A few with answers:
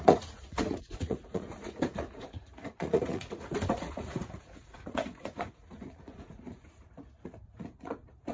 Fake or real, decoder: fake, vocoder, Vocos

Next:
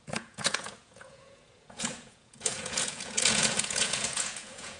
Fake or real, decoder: fake, vocoder, Vocos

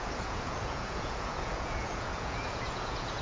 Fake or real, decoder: fake, vocoder, Vocos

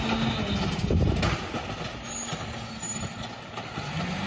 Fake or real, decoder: real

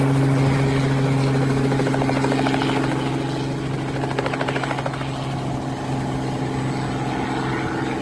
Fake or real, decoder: real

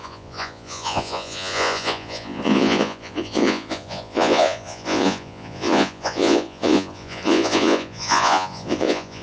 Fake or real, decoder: fake, vocoder, Vocos